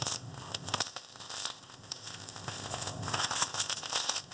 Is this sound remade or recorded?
remade